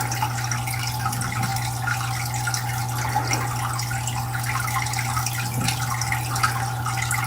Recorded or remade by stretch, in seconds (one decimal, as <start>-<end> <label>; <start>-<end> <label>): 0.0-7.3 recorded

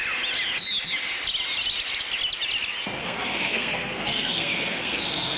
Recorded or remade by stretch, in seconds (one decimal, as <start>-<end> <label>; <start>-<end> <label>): 0.0-3.0 recorded; 3.0-5.4 remade

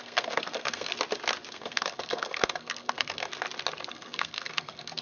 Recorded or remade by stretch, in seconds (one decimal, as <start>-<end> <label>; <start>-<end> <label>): 0.0-0.9 remade; 0.9-1.5 recorded; 1.5-3.3 remade; 3.3-3.9 recorded; 3.9-5.0 remade